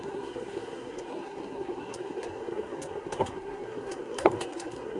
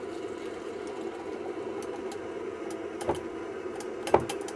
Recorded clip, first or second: second